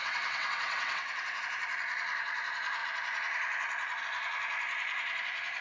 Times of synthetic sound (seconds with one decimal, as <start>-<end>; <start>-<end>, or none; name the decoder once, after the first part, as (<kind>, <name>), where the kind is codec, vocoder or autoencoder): 0.0-1.4 (vocoder, WaveNeXt)